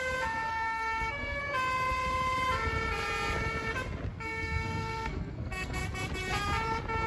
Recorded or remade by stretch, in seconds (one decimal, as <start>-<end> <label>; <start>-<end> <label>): 0.0-0.5 recorded; 0.5-1.4 remade; 1.4-4.1 recorded; 4.1-5.8 remade; 5.8-7.1 recorded